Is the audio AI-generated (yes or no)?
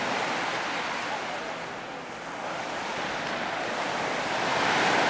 no